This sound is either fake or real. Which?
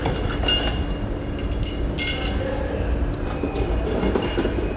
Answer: real